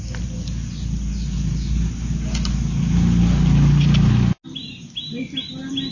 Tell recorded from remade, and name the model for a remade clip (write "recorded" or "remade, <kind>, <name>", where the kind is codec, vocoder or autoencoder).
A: recorded